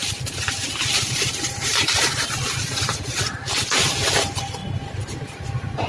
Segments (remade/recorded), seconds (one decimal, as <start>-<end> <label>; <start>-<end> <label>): 0.0-3.2 remade; 3.2-5.9 recorded